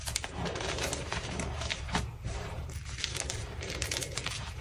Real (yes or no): no